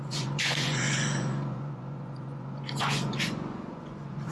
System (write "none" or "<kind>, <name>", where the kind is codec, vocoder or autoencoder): vocoder, Vocos